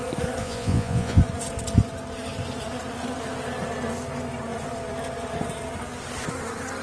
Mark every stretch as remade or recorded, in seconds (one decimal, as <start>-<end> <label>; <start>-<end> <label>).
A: 0.0-0.4 recorded; 0.4-1.2 remade; 1.2-6.8 recorded